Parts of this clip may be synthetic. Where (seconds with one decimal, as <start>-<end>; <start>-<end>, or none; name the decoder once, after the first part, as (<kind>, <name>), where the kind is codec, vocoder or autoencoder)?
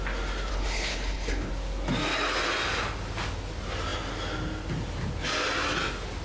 0.5-1.5 (codec, HILCodec)